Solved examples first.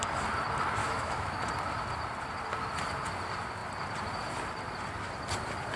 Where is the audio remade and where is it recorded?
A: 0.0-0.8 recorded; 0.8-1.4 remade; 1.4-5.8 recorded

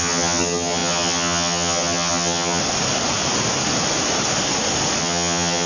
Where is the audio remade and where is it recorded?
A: 0.0-2.6 remade; 2.6-5.0 recorded; 5.0-5.7 remade

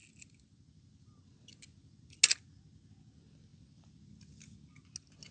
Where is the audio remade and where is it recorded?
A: 0.0-5.3 recorded

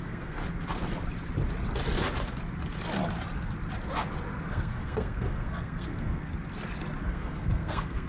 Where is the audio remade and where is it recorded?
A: 0.0-0.4 remade; 0.4-4.5 recorded; 4.5-6.3 remade; 6.3-7.0 recorded; 7.0-8.1 remade

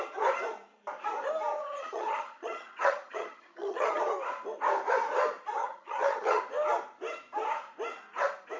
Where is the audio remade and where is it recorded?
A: 0.0-1.5 recorded; 1.5-4.0 remade; 4.0-5.6 recorded; 5.6-6.4 remade; 6.4-8.6 recorded